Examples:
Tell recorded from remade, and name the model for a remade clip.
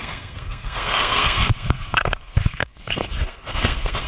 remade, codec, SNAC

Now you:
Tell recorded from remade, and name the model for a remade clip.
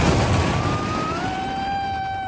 remade, vocoder, BigVGAN v2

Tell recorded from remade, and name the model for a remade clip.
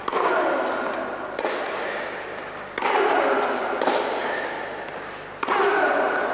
recorded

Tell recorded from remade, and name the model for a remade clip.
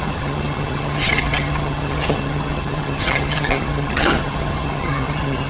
remade, vocoder, HiFi-GAN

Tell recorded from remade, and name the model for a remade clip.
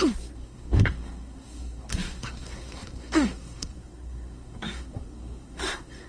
remade, codec, SNAC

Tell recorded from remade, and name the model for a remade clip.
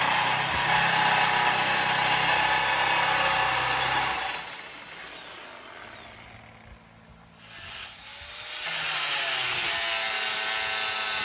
recorded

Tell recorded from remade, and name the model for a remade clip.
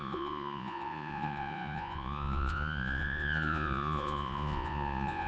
remade, vocoder, Vocos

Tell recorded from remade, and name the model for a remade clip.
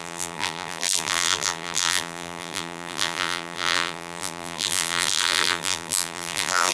remade, vocoder, BigVGAN v2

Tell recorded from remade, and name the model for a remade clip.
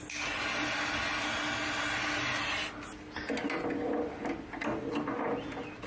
recorded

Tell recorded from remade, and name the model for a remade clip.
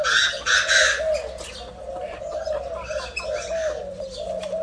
recorded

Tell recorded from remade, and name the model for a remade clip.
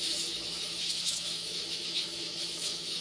remade, autoencoder, DAC-VAE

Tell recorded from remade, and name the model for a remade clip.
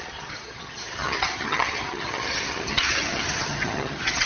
remade, vocoder, HiFi-GAN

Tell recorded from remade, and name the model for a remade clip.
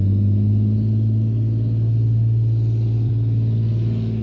recorded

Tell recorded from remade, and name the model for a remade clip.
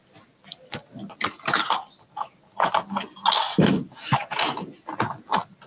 recorded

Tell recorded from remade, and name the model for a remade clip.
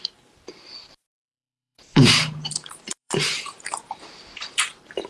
remade, vocoder, BigVGAN v2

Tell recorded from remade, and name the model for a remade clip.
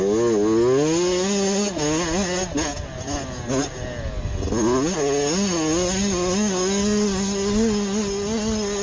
recorded